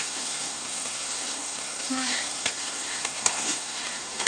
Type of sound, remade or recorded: remade